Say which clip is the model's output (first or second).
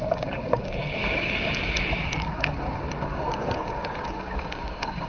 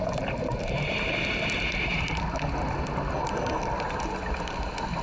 first